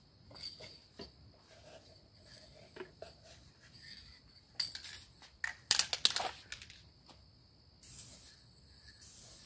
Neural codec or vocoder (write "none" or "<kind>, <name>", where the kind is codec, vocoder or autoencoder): none